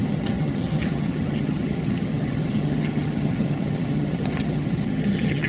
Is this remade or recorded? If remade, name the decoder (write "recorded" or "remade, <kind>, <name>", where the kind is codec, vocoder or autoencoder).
remade, vocoder, HiFi-GAN